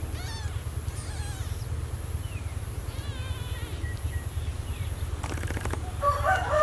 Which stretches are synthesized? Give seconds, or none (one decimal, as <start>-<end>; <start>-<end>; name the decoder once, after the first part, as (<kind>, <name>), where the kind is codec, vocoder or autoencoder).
4.5-6.6 (vocoder, BigVGAN v2)